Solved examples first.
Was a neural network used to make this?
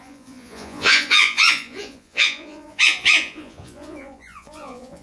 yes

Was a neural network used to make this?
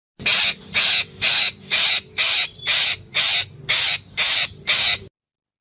no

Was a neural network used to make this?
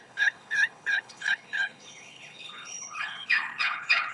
yes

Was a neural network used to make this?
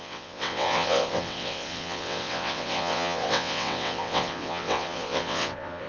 yes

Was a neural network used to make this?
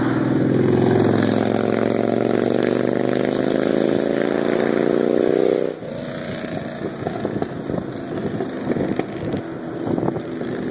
no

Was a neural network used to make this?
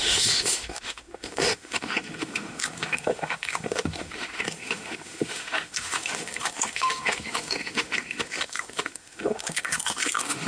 yes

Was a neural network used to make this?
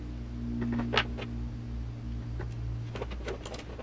no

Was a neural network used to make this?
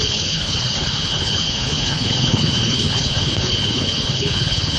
yes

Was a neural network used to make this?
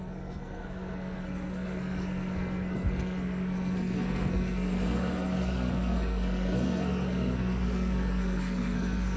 yes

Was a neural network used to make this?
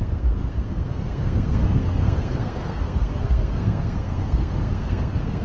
yes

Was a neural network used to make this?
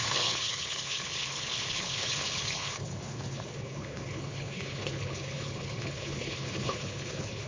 yes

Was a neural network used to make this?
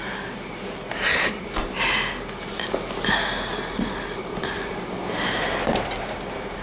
no